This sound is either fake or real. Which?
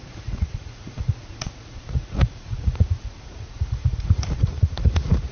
fake